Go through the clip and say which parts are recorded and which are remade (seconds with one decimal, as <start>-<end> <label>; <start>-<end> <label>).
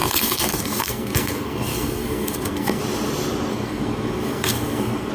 0.0-2.8 remade; 2.8-3.5 recorded; 3.5-5.1 remade